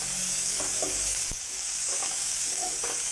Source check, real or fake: fake